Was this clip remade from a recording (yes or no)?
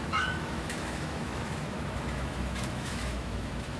yes